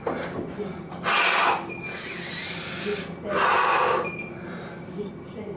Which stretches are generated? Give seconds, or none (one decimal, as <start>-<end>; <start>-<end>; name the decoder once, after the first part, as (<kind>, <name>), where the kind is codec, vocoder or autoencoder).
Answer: none